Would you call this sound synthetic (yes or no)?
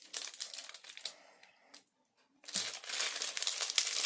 no